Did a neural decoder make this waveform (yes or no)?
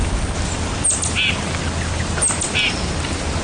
no